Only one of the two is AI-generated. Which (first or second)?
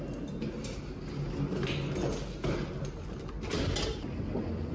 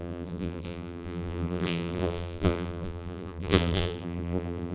second